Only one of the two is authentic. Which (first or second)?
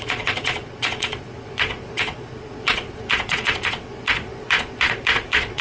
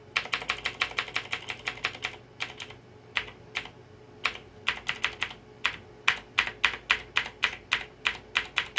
second